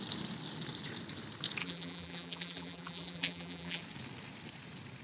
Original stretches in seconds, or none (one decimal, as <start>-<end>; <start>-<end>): 0.0-1.6; 3.8-5.0